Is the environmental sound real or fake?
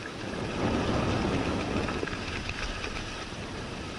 real